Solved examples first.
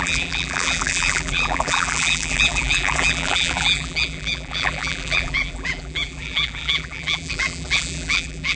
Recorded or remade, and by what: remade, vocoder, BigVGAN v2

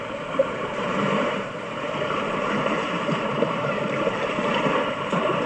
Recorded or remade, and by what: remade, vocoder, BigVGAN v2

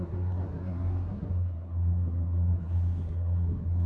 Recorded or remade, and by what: remade, codec, SNAC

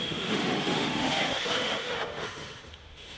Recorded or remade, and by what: remade, autoencoder, DAC-VAE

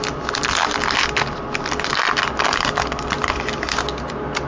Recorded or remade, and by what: recorded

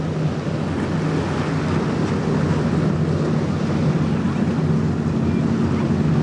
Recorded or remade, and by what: recorded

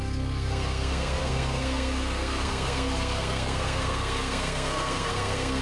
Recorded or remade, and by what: remade, codec, SNAC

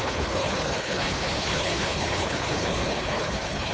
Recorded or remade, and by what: remade, codec, HILCodec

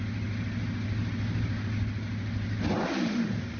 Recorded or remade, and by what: recorded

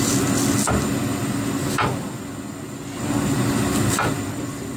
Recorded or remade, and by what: recorded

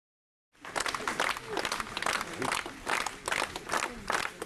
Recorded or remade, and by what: recorded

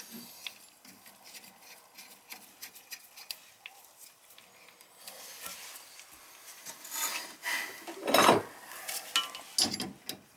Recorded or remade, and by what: recorded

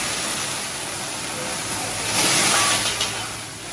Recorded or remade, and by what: recorded